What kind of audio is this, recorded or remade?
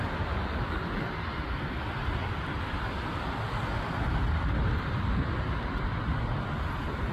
recorded